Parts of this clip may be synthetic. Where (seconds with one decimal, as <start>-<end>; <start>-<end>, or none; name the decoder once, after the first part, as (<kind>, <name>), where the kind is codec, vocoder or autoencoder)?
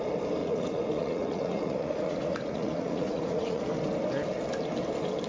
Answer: 0.4-3.6 (vocoder, Vocos)